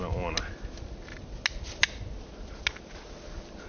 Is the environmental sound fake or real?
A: real